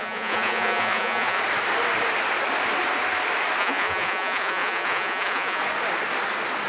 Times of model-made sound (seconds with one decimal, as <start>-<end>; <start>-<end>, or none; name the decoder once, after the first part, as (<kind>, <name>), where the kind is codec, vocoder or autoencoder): 0.0-1.4 (vocoder, Vocos); 3.6-5.6